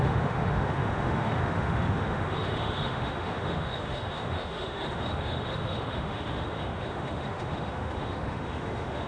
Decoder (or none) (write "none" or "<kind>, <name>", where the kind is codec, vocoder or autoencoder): autoencoder, DAC-VAE